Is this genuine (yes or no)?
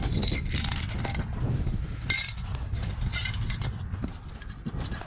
yes